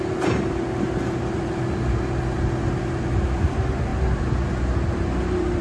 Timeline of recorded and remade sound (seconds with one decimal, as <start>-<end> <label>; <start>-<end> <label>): 0.0-5.6 recorded